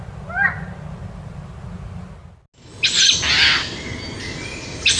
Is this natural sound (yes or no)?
yes